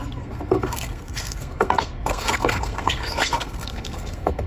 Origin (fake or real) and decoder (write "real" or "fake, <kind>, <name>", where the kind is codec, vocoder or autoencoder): fake, codec, SNAC